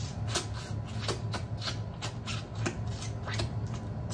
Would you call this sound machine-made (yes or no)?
no